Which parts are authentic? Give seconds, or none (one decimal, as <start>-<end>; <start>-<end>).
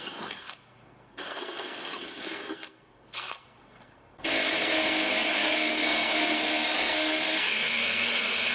none